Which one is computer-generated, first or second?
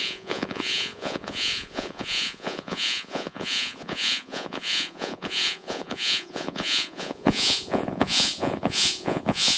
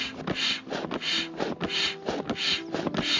first